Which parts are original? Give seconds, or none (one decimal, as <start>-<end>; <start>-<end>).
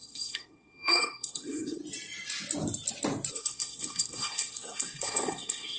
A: 1.8-3.3